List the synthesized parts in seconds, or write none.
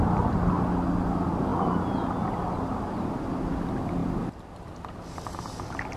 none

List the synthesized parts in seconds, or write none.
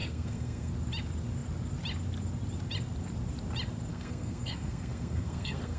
0.0-0.7 (codec, SNAC); 3.9-5.8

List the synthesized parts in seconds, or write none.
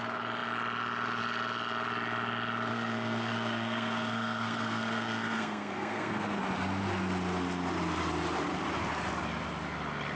2.7-6.4 (codec, SNAC)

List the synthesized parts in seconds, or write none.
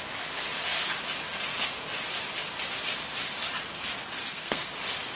4.2-4.7 (codec, SNAC)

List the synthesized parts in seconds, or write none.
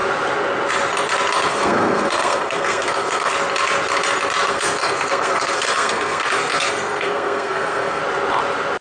1.5-3.3 (codec, SNAC); 4.5-8.0